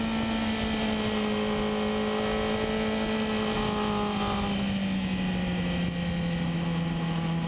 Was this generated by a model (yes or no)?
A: no